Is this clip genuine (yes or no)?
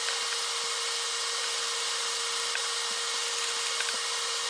yes